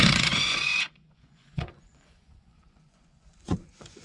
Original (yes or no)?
no